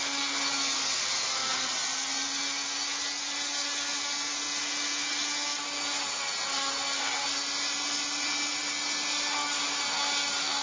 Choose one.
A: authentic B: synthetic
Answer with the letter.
A